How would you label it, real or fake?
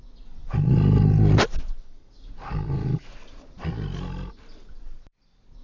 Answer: real